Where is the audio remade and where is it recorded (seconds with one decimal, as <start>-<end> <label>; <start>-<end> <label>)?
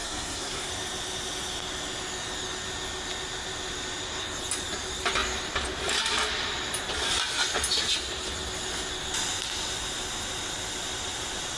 0.0-0.7 remade; 0.7-11.6 recorded